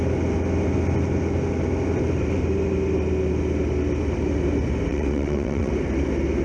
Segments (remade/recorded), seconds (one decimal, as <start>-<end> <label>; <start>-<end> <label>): 0.0-4.9 recorded; 4.9-5.7 remade; 5.7-6.4 recorded